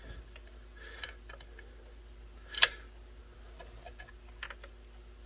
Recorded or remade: recorded